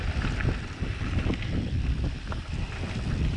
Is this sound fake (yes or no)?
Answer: yes